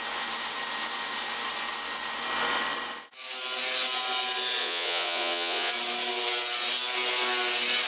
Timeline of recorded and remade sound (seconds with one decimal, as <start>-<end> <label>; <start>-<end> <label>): 0.0-4.6 recorded; 4.6-5.7 remade; 5.7-7.9 recorded